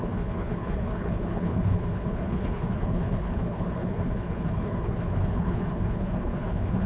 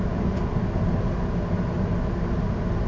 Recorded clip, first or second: second